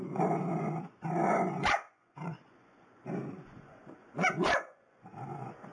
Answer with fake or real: fake